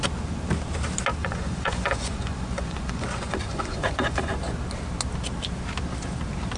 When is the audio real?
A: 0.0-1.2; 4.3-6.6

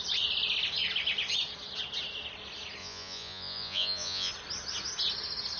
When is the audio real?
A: 0.0-2.8; 4.3-5.6

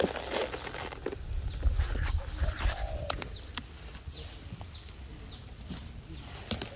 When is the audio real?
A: 0.0-6.8

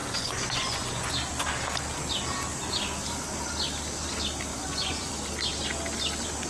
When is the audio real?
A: 1.1-4.5; 5.1-6.5